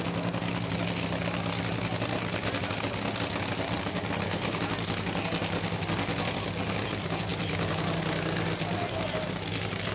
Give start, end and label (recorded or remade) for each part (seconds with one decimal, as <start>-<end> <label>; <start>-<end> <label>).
0.0-7.3 recorded; 7.3-8.0 remade; 8.0-9.9 recorded